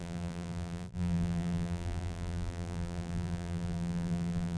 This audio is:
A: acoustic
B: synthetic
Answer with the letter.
B